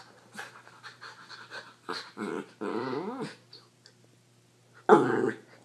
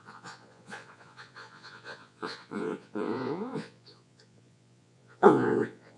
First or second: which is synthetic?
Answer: second